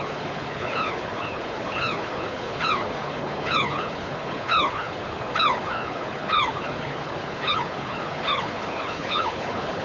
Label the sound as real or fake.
fake